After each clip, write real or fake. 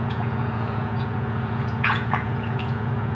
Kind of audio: fake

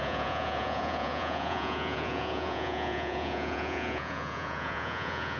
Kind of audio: fake